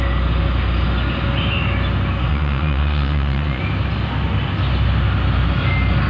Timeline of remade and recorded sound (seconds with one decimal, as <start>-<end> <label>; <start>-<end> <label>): 0.0-2.3 recorded; 2.3-3.6 remade; 3.6-6.1 recorded